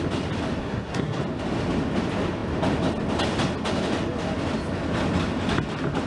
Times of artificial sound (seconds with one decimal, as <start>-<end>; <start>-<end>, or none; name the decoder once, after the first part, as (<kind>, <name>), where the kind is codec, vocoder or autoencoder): 0.6-1.2 (codec, SNAC)